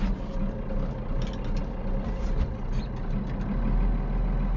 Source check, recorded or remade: recorded